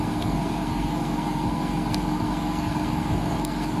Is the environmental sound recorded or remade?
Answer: remade